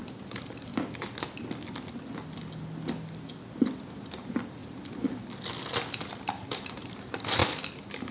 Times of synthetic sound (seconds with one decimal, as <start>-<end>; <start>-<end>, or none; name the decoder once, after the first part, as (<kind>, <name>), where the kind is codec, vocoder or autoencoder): 0.0-0.7 (vocoder, BigVGAN v2); 4.1-4.6; 5.9-7.4